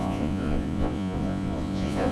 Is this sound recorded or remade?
remade